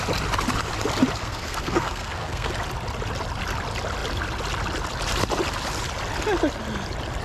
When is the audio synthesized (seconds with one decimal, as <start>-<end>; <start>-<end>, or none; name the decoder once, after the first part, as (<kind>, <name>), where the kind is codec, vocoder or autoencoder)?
1.2-2.5 (codec, SNAC)